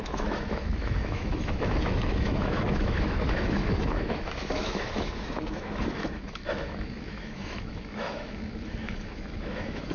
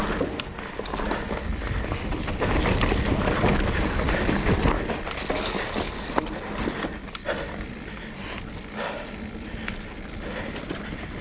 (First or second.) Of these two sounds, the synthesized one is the first